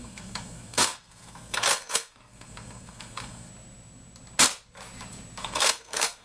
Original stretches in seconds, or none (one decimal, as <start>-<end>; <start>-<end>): 3.5-5.4